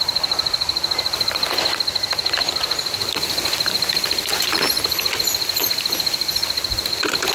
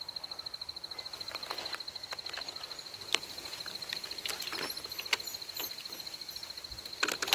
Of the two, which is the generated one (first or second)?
first